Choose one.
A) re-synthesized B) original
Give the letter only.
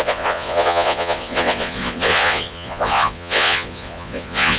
A